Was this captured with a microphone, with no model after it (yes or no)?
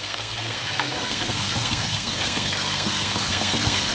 no